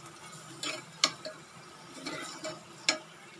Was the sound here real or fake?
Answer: real